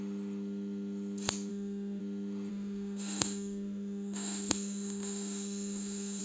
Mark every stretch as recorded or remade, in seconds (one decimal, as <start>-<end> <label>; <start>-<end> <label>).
0.0-1.5 recorded; 1.5-2.0 remade; 2.0-2.5 recorded; 2.5-6.2 remade